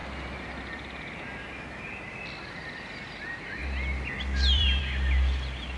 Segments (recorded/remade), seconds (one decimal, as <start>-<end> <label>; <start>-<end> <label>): 0.0-2.6 recorded; 2.6-3.2 remade; 3.2-3.6 recorded; 3.6-4.8 remade; 4.8-5.8 recorded